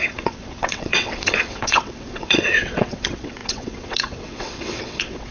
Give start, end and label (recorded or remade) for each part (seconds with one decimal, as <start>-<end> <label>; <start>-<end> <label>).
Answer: 0.0-5.3 remade